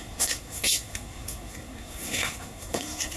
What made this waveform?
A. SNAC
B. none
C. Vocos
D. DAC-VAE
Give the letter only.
A